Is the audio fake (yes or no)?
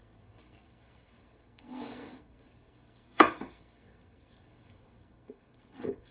yes